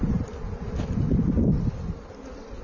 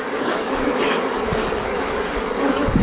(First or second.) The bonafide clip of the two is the first